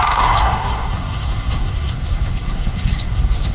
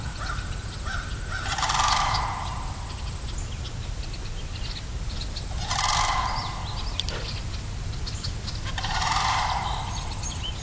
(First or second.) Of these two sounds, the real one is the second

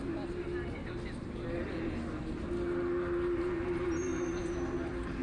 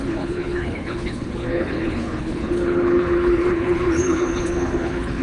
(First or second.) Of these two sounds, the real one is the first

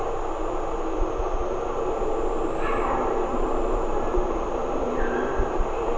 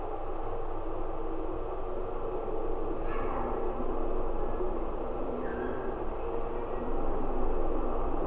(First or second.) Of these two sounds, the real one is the second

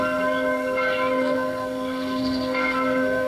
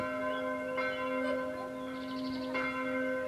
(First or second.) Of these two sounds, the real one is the second